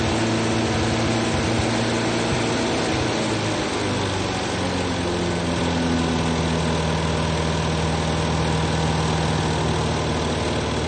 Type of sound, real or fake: real